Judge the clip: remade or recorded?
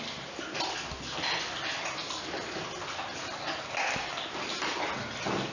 recorded